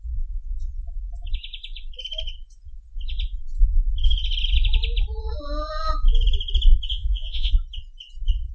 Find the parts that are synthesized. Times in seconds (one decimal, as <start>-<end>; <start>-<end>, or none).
6.9-7.5

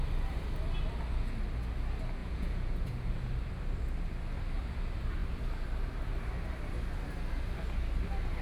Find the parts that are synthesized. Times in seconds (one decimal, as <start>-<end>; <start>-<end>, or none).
2.2-3.3

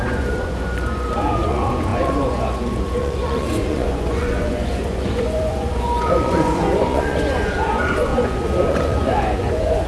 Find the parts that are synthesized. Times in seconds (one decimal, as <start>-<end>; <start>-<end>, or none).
0.0-9.9

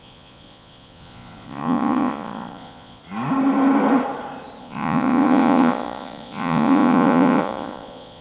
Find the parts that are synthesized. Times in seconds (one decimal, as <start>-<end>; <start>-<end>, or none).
0.0-3.0; 4.6-8.2

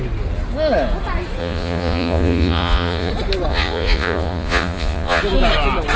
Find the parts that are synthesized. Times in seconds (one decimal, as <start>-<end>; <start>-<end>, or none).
1.4-3.1; 3.5-5.2

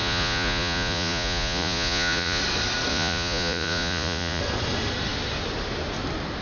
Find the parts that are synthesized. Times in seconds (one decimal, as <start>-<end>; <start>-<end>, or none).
0.0-2.4; 2.9-4.4

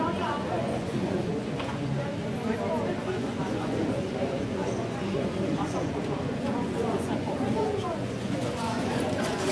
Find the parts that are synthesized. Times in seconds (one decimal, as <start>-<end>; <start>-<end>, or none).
0.0-2.1; 3.0-9.5

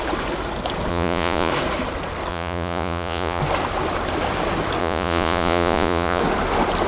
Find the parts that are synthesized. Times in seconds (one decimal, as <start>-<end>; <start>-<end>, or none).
0.9-1.5; 2.3-3.4; 4.8-6.2